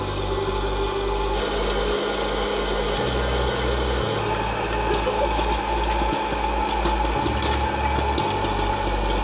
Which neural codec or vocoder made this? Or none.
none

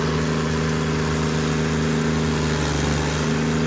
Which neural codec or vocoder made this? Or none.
none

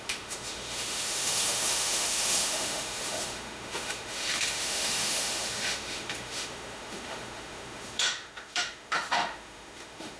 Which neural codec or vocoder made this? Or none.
autoencoder, DAC-VAE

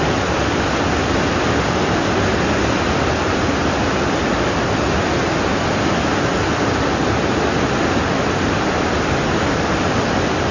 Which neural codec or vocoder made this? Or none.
none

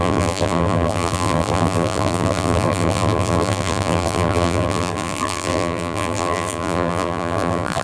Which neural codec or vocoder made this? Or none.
vocoder, BigVGAN v2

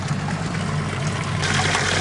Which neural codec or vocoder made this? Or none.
none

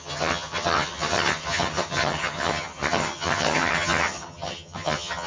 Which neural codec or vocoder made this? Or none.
vocoder, HiFi-GAN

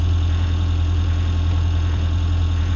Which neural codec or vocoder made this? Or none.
vocoder, Vocos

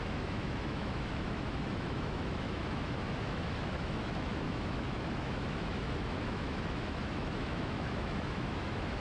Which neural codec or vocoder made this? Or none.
autoencoder, DAC-VAE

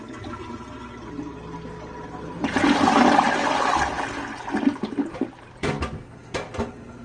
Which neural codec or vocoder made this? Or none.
none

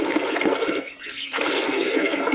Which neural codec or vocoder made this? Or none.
codec, SNAC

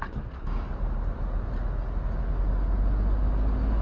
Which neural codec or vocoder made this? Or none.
none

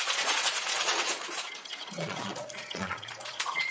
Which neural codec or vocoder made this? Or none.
vocoder, Vocos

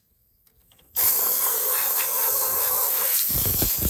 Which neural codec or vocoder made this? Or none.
codec, SNAC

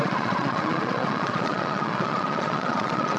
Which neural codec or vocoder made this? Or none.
vocoder, Vocos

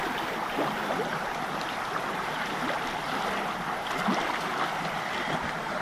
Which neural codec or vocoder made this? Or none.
vocoder, BigVGAN v2